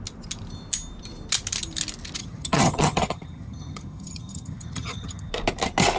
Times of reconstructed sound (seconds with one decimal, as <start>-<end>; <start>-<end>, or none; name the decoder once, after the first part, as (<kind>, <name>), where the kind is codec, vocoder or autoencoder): 2.2-5.3 (vocoder, HiFi-GAN)